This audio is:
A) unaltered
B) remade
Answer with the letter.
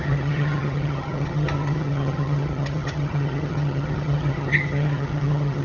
B